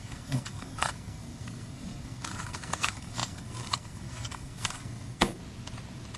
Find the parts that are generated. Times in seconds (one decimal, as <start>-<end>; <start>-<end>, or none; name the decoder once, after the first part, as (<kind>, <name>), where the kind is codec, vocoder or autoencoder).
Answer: 0.0-5.4 (codec, SNAC)